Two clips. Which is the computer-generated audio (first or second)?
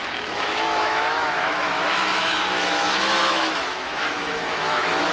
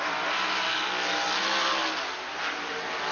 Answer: first